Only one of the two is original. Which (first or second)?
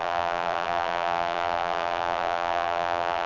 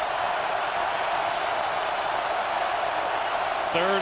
second